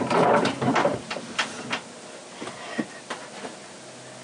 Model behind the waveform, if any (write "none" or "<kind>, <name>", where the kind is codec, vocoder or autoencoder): none